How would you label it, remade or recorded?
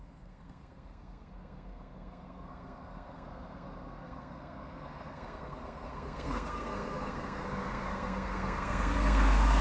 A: remade